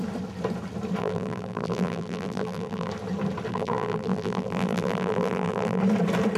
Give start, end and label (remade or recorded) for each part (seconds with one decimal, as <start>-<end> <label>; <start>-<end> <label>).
0.0-1.0 recorded; 1.0-2.9 remade; 2.9-3.5 recorded; 3.5-5.8 remade; 5.8-6.4 recorded